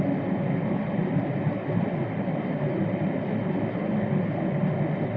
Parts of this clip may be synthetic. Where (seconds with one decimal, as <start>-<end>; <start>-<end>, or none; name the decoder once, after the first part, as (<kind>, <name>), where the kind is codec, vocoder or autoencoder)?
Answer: none